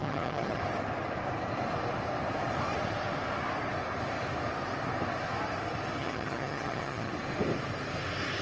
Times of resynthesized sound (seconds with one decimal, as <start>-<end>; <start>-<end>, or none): 0.0-0.6; 6.0-7.1